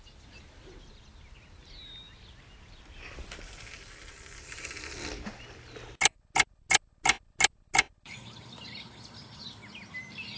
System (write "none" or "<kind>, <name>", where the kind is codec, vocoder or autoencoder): none